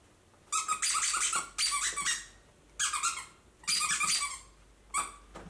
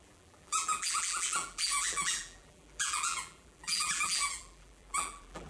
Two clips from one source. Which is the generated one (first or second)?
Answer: second